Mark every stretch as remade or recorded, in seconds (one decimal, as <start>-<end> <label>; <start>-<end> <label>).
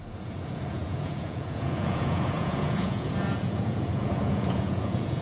0.0-5.2 remade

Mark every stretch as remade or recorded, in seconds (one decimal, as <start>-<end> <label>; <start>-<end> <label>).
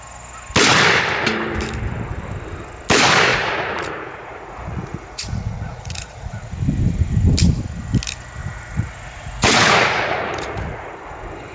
0.0-3.3 recorded; 3.3-6.5 remade; 6.5-8.4 recorded; 8.4-11.0 remade; 11.0-11.5 recorded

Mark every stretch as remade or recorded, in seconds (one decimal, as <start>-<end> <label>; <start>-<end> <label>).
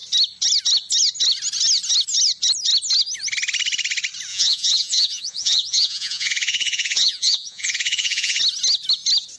0.0-4.3 recorded; 4.3-8.4 remade; 8.4-9.4 recorded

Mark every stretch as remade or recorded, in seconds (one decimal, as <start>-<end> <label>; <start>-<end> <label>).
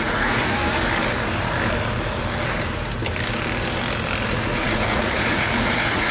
0.0-0.6 remade; 0.6-4.3 recorded; 4.3-6.1 remade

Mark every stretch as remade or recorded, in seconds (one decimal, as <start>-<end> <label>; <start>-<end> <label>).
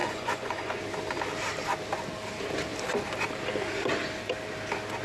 0.0-0.8 remade; 0.8-5.0 recorded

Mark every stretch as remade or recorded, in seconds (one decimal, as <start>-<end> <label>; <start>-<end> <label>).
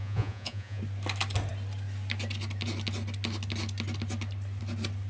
0.0-0.8 remade; 0.8-5.1 recorded